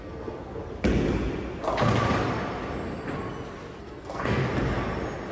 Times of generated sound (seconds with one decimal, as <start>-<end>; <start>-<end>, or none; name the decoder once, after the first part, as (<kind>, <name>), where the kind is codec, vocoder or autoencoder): 0.0-0.6 (codec, SNAC); 3.8-4.4